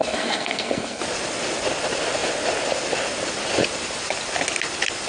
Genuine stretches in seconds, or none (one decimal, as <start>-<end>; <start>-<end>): 1.0-5.1